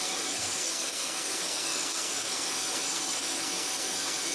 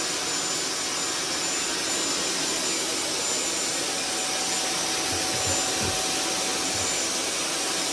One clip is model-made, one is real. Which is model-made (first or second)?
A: first